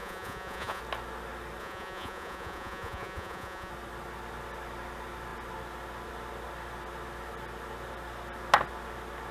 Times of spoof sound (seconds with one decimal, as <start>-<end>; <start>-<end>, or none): 0.0-0.8; 1.6-3.7